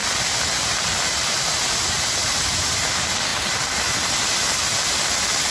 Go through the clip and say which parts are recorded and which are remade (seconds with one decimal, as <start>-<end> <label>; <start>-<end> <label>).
0.0-2.2 recorded; 2.2-2.8 remade; 2.8-5.5 recorded